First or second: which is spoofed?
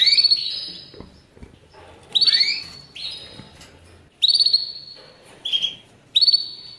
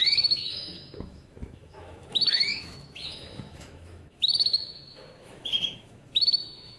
second